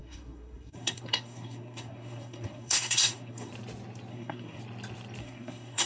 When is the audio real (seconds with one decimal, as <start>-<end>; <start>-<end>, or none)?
3.5-4.1; 4.6-5.2